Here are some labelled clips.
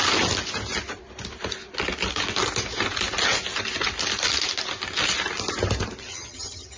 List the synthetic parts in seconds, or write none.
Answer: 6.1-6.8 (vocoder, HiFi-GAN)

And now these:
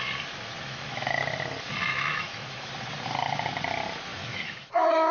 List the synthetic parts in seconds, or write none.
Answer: 0.6-1.2 (autoencoder, DAC-VAE); 1.9-2.7; 4.1-5.1

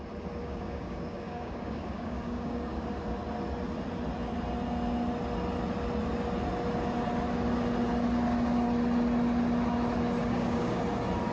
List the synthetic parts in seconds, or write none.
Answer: 0.4-2.9 (codec, DAC); 10.2-10.8

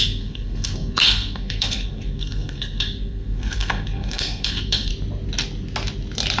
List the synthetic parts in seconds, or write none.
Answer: 0.0-4.9 (codec, SNAC)

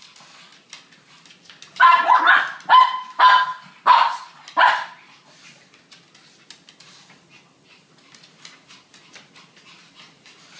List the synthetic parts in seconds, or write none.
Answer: none

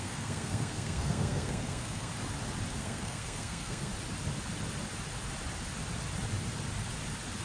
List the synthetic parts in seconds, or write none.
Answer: 0.0-2.1 (codec, SNAC); 2.8-3.9

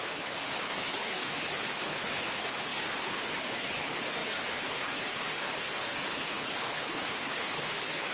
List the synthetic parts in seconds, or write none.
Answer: 0.0-8.1 (codec, HILCodec)